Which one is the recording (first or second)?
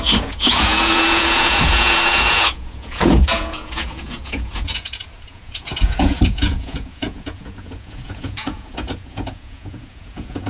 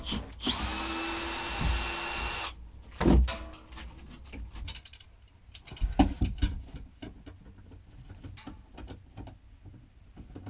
second